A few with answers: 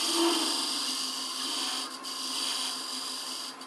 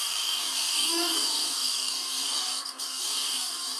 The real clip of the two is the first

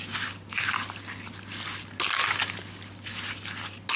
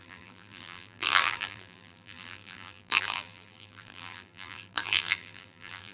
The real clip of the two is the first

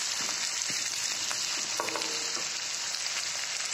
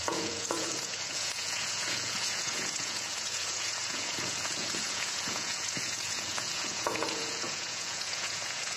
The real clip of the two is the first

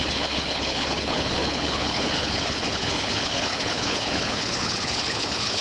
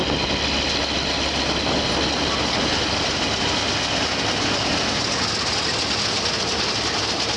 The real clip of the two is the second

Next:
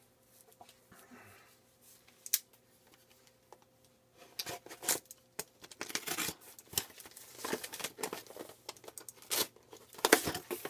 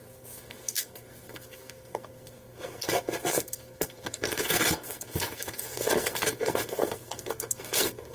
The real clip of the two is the first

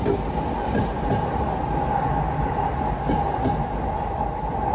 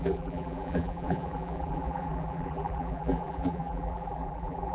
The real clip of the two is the first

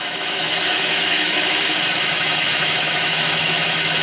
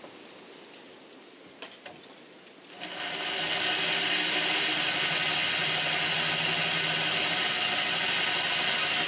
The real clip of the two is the second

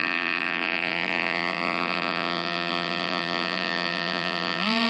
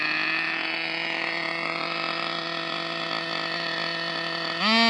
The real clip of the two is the second